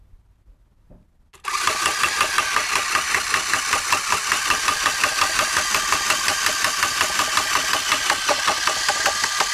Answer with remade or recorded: recorded